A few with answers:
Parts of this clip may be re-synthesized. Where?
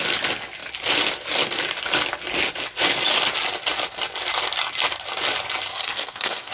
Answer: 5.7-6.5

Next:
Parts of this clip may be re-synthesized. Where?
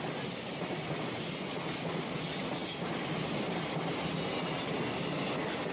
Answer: none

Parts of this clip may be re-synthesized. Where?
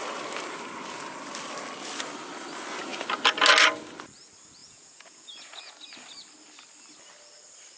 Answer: 4.6-5.7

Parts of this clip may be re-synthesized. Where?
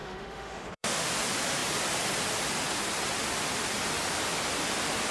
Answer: 0.0-1.1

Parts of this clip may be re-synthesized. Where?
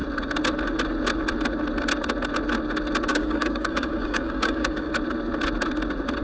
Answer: 3.1-4.9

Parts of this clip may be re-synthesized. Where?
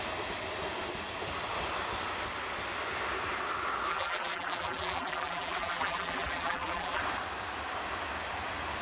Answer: 3.9-7.0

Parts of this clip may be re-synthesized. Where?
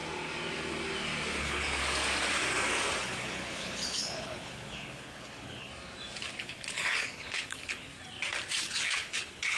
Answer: 1.4-1.8; 3.0-5.7; 6.4-7.9; 8.6-9.6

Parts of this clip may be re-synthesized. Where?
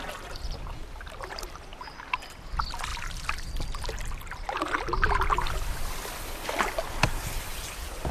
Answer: none